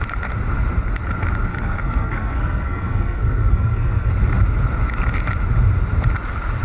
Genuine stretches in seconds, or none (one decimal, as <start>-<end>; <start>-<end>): 0.0-1.5; 4.1-6.6